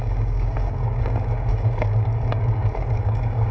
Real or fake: fake